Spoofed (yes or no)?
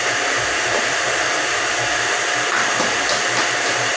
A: no